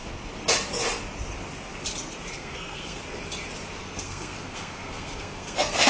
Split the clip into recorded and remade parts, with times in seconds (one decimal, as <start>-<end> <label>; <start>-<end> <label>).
0.0-2.3 recorded; 2.3-3.0 remade; 3.0-3.8 recorded; 3.8-5.9 remade